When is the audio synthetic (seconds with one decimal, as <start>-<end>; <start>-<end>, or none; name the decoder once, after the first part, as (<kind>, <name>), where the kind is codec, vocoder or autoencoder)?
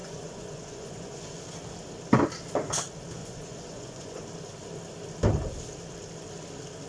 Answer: 0.0-1.2 (vocoder, Vocos); 3.2-4.2